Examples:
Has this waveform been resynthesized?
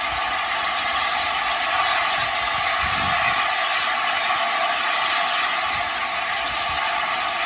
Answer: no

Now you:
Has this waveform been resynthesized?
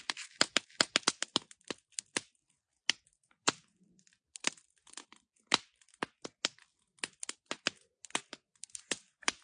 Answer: no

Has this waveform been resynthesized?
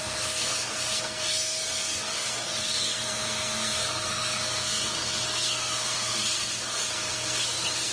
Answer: yes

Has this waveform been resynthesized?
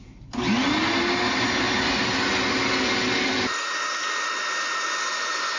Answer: no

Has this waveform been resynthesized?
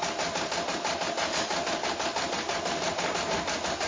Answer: no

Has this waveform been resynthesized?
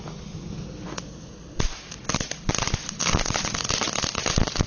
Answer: no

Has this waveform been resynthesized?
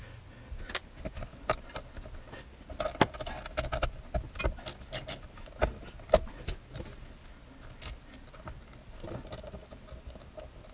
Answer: no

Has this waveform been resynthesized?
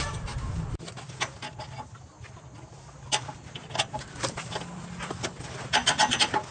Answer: no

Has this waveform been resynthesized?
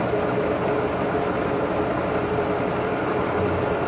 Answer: no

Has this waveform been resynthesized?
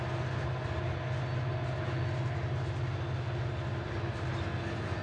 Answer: no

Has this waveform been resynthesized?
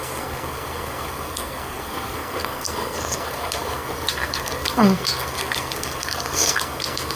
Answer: yes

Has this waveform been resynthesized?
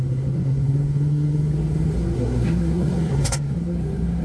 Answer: yes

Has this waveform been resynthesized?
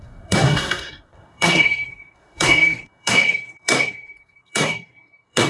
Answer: yes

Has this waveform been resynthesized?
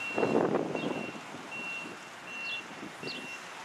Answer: no